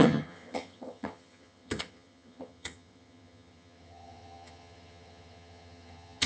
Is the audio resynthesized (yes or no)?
yes